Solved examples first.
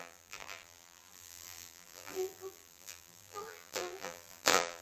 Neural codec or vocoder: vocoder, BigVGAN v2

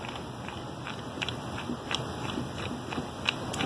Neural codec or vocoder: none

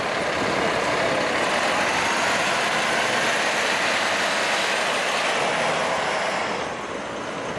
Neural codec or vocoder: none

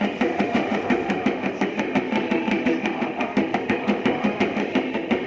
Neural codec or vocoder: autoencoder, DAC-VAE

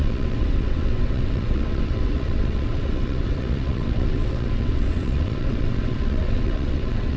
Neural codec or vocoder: vocoder, WaveNeXt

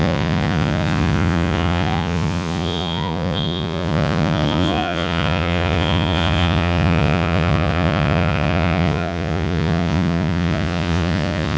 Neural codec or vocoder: vocoder, Vocos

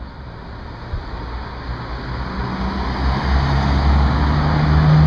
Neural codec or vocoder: none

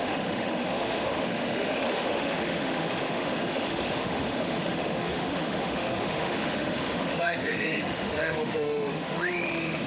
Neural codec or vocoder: autoencoder, DAC-VAE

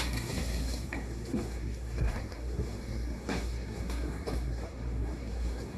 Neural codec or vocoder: codec, SNAC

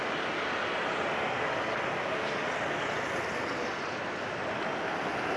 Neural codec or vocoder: none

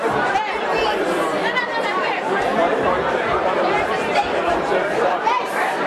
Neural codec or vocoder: vocoder, BigVGAN v2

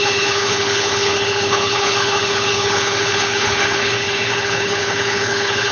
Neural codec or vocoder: codec, HILCodec